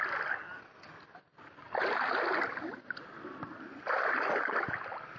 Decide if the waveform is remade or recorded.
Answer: recorded